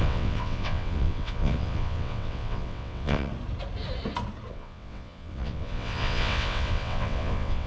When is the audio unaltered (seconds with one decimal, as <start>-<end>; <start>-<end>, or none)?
3.3-4.5

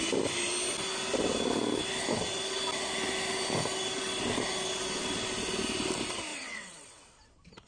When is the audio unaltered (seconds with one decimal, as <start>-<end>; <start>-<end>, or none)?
0.0-6.3; 7.1-7.7